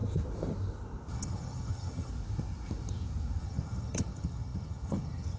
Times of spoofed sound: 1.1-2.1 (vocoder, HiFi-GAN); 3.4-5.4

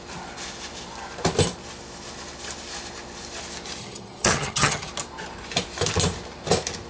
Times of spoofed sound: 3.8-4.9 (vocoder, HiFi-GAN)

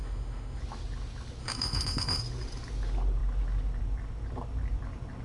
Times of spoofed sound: 0.0-0.6 (autoencoder, DAC-VAE); 1.4-2.2